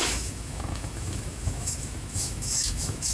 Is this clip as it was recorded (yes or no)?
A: no